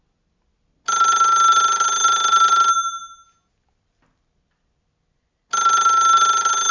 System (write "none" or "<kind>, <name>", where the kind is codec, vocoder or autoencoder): none